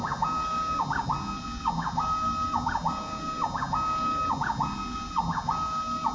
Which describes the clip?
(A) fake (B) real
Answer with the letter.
B